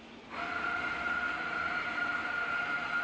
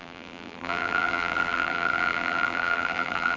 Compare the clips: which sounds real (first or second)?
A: first